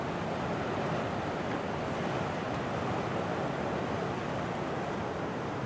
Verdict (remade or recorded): recorded